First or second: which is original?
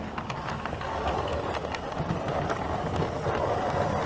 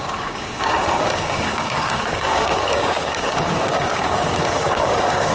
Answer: first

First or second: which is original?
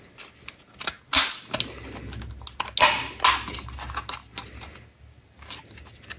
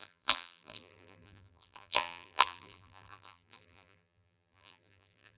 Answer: first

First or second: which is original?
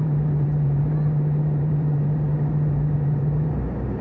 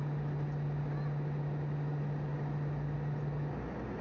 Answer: second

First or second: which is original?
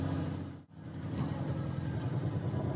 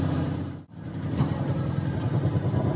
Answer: first